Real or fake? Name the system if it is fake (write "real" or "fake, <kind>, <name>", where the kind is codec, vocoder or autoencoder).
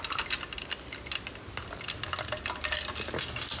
real